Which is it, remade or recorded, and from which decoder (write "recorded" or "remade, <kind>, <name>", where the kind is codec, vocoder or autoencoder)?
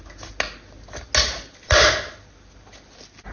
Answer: recorded